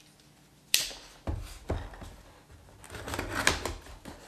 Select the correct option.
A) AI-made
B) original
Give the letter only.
B